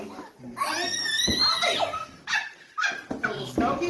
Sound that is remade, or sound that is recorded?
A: recorded